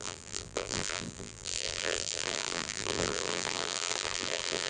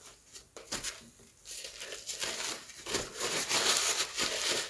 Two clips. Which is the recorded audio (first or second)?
second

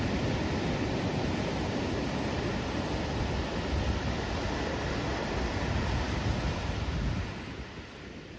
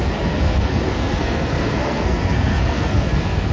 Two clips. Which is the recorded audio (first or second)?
first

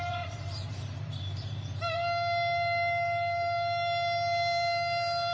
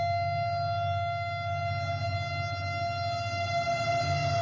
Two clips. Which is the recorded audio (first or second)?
second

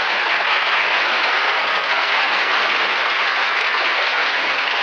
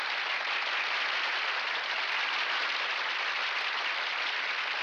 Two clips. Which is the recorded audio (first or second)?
second